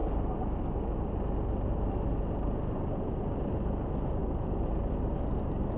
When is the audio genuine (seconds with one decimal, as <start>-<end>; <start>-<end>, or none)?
0.0-5.8